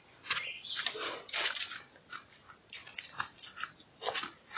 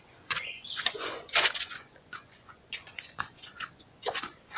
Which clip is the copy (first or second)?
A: second